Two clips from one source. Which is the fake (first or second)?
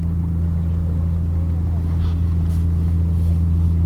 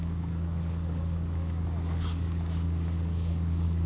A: second